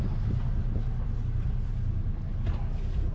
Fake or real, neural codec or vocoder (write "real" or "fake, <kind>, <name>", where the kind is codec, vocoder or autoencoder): real